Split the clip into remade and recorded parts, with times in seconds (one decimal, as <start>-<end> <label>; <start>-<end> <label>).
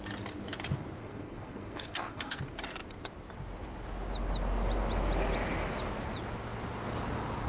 0.0-1.0 recorded; 1.0-2.4 remade; 2.4-7.5 recorded